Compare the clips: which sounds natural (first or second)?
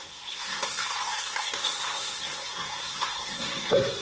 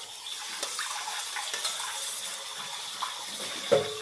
second